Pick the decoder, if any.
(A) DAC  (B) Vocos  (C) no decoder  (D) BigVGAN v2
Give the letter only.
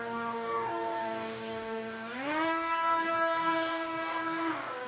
A